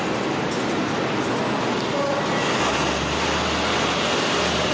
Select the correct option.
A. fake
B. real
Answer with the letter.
B